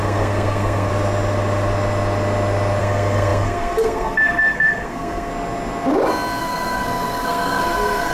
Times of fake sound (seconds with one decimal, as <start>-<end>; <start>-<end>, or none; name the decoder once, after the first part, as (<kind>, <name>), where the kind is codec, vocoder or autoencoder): 0.0-0.9 (codec, SNAC); 2.8-5.3; 6.4-8.1